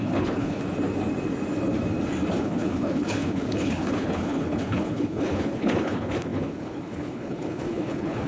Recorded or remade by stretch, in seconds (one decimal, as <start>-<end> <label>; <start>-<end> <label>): 0.0-0.6 remade; 0.6-2.4 recorded; 2.4-8.3 remade